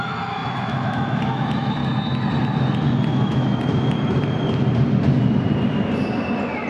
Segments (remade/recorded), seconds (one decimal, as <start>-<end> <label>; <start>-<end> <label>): 0.0-1.8 remade; 1.8-3.1 recorded; 3.1-3.7 remade; 3.7-6.7 recorded